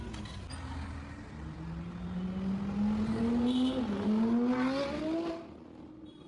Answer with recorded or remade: recorded